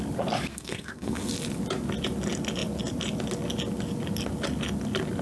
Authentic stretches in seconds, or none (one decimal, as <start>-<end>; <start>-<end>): 0.0-0.5; 1.3-5.2